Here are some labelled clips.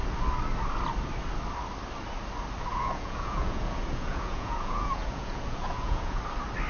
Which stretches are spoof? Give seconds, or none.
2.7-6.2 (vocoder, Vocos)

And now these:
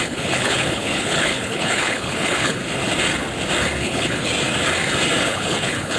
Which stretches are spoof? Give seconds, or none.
0.0-2.6 (codec, HILCodec); 3.8-4.3; 5.2-6.0

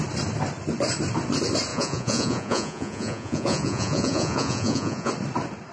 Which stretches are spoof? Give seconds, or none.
1.7-5.1 (vocoder, Vocos)

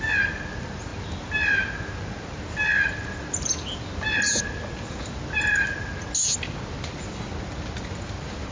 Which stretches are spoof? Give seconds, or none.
none